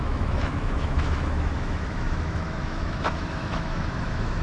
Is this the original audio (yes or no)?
no